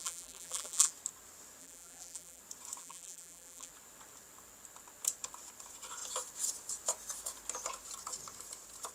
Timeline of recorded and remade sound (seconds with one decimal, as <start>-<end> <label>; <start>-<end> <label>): 0.0-0.9 remade; 0.9-1.6 recorded; 1.6-2.4 remade; 2.4-2.8 recorded; 2.8-3.7 remade; 3.7-8.9 recorded

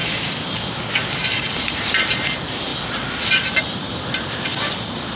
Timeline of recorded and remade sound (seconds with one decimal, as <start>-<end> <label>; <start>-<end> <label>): 0.0-1.1 recorded; 1.1-2.7 remade; 2.7-3.6 recorded; 3.6-4.5 remade; 4.5-5.2 recorded

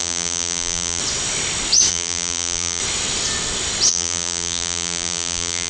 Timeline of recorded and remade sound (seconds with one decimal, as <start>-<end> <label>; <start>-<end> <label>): 0.0-1.0 remade; 1.0-1.9 recorded; 1.9-2.8 remade; 2.8-3.9 recorded; 3.9-5.7 remade

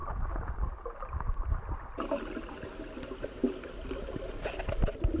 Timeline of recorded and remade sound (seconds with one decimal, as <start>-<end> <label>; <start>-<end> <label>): 0.0-1.5 remade; 1.5-5.2 recorded

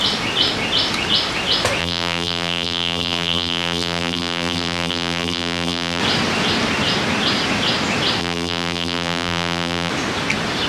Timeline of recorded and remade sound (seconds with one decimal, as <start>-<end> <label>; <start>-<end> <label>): 0.0-1.8 recorded; 1.8-6.0 remade; 6.0-8.2 recorded; 8.2-9.9 remade; 9.9-10.7 recorded